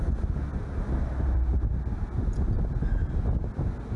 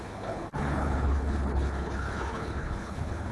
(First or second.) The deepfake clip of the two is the second